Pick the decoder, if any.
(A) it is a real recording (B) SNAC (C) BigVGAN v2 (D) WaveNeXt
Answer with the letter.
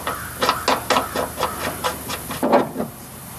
A